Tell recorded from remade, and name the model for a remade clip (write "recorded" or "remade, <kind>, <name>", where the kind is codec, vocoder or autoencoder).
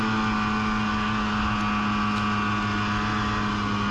recorded